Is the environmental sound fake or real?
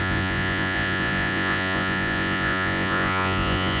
fake